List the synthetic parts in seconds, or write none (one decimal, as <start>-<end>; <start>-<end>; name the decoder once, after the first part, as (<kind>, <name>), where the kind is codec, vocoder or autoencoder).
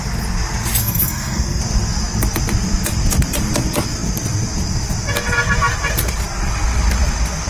0.8-1.6 (codec, SNAC)